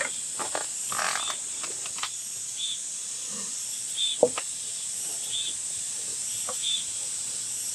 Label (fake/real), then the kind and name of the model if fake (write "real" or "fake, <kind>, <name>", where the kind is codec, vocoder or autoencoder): real